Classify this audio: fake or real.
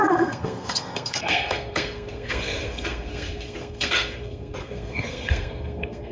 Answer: fake